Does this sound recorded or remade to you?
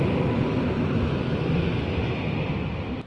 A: recorded